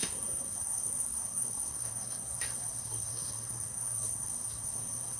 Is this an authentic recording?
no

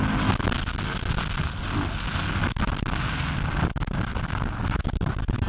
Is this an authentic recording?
yes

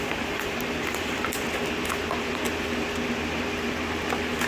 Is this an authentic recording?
yes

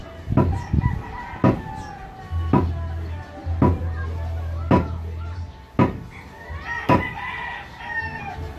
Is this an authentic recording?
yes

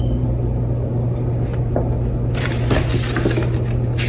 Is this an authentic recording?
yes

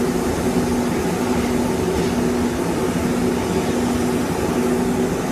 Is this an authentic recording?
yes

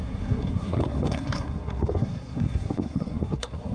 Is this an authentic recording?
no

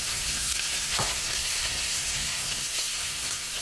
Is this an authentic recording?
no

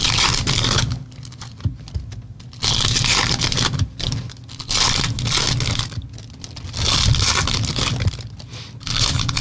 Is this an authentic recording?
yes